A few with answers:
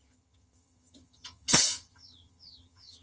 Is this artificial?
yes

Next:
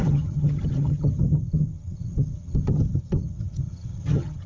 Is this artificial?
yes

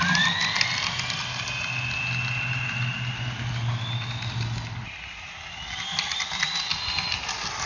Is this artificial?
no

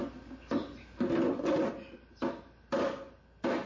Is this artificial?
no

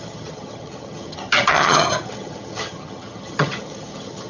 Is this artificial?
yes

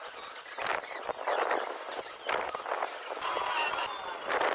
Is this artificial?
no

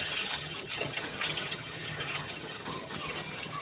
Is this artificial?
yes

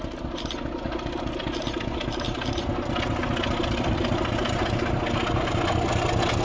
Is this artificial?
no